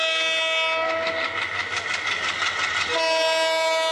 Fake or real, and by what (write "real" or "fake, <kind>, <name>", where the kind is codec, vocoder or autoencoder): real